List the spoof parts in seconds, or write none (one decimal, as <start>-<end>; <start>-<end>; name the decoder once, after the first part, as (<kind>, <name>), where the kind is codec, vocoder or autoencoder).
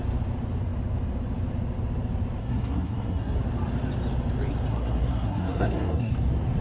2.4-3.4 (codec, SNAC); 4.7-6.1